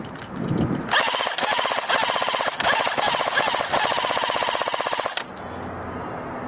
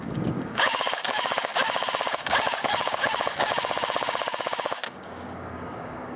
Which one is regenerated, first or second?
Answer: second